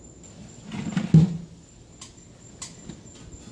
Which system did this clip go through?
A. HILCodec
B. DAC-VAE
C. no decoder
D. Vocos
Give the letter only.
C